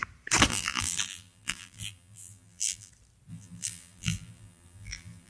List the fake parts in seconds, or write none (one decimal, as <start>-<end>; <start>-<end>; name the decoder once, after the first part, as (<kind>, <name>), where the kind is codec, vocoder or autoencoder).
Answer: 0.5-2.9 (vocoder, BigVGAN v2); 3.3-5.3

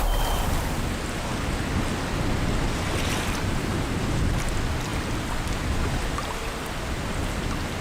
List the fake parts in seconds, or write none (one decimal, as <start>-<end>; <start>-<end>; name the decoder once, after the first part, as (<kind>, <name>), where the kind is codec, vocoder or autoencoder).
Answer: none

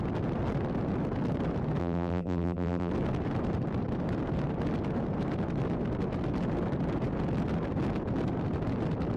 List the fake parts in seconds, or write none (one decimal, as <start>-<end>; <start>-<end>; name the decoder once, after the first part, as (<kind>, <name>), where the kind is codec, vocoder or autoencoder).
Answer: 1.8-2.9 (vocoder, BigVGAN v2)

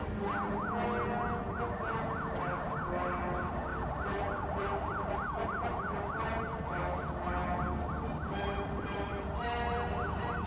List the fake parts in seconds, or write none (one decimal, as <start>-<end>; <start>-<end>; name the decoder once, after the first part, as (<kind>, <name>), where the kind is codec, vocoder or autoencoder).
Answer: 3.7-6.8 (vocoder, BigVGAN v2)

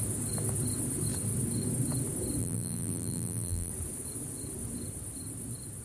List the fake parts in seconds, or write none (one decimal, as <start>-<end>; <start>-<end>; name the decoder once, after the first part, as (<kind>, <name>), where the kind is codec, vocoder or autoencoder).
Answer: 2.4-3.7 (vocoder, BigVGAN v2)